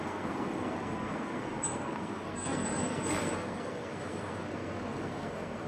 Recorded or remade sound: remade